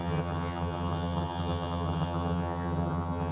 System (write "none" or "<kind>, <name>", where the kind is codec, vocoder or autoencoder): vocoder, HiFi-GAN